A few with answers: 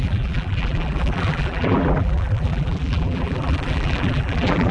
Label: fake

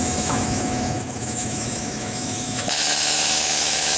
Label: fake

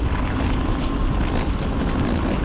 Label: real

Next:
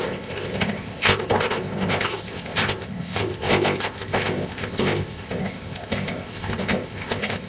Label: fake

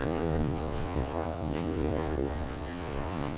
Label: fake